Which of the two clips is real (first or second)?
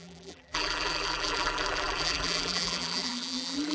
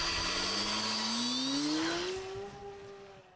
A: second